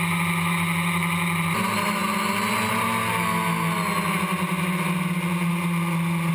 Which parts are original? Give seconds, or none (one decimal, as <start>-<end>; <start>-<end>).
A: 0.0-6.3